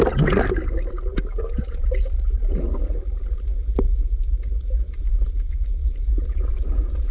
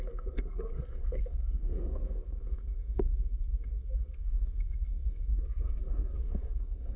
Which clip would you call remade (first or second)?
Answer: second